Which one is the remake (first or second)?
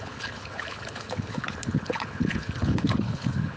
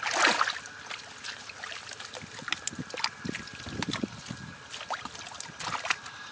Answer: first